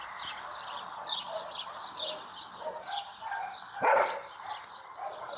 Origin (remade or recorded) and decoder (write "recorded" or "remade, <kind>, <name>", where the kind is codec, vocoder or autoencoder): recorded